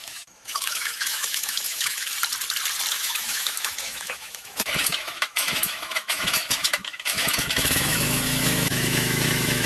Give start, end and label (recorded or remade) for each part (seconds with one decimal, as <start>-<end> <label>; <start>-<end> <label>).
0.0-2.1 remade; 2.1-2.9 recorded; 2.9-9.7 remade

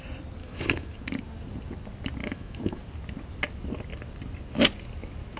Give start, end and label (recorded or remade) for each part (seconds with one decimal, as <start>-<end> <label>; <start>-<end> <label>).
0.0-0.4 recorded; 0.4-1.0 remade; 1.0-2.2 recorded; 2.2-2.8 remade; 2.8-5.4 recorded

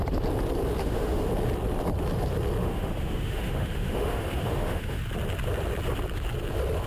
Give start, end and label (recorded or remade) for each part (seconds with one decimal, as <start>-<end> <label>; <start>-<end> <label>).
0.0-0.8 recorded; 0.8-1.3 remade; 1.3-2.6 recorded; 2.6-5.0 remade; 5.0-6.9 recorded